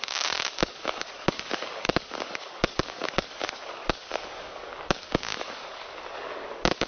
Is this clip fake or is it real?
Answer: fake